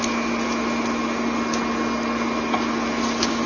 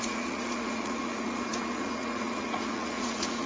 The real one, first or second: first